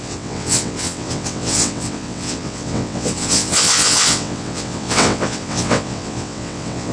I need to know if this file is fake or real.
fake